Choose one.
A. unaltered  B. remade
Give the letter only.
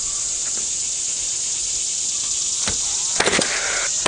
A